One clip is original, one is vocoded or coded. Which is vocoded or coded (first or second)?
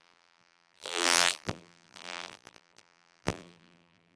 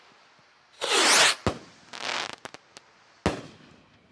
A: first